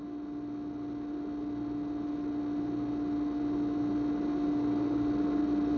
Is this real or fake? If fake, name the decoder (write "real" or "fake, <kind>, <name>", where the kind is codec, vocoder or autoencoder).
real